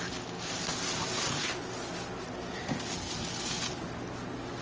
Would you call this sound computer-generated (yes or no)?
no